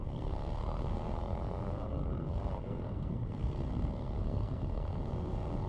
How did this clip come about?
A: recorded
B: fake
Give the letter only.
B